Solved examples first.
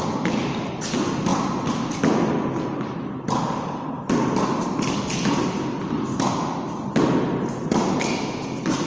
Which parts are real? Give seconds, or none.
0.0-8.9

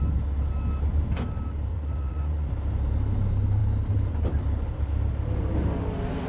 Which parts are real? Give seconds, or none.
0.0-1.7; 2.5-6.3

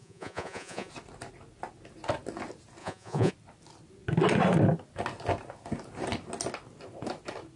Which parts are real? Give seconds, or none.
0.9-2.8; 3.3-7.6

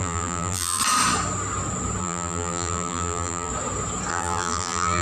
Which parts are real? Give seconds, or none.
0.8-2.0; 3.5-4.1

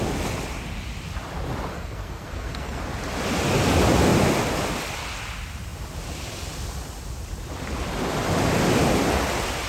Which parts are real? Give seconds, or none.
0.0-1.7; 2.8-9.7